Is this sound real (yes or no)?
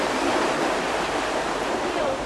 no